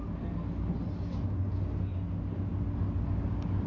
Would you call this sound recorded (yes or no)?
yes